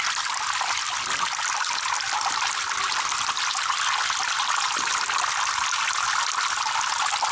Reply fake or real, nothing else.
real